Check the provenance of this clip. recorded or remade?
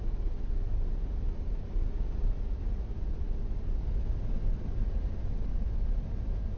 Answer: recorded